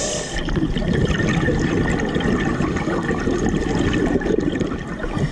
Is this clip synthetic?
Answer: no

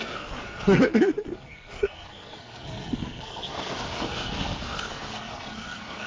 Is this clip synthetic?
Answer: yes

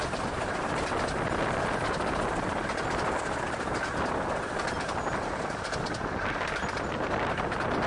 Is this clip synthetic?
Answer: no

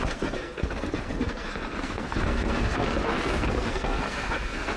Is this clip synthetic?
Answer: yes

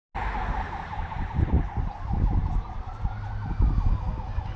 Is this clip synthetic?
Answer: no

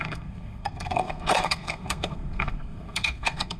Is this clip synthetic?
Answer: yes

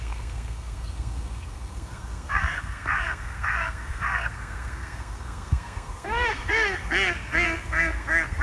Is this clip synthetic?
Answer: yes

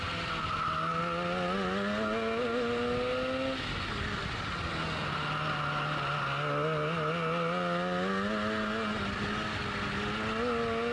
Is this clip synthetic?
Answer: no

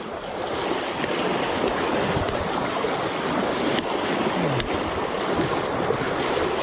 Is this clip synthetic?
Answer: no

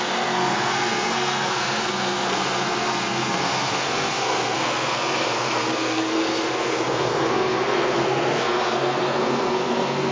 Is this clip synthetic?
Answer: yes